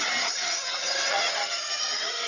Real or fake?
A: fake